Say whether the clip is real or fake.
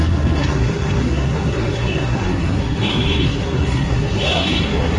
fake